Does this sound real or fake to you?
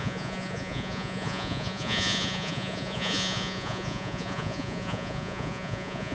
fake